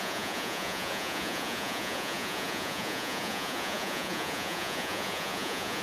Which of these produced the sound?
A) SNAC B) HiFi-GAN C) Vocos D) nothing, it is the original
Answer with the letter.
C